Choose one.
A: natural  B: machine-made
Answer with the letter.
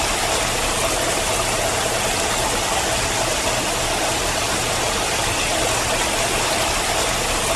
A